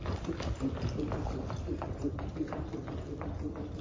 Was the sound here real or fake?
real